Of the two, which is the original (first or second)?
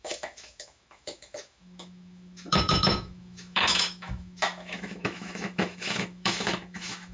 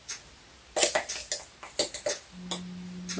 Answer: second